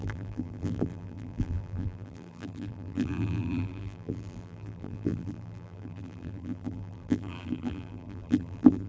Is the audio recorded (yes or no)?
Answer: no